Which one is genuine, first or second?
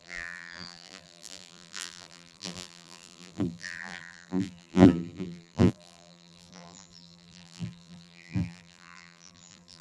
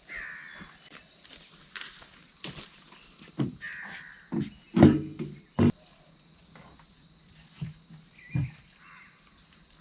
second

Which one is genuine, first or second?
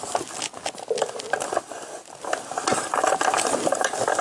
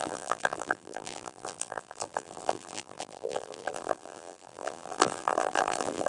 first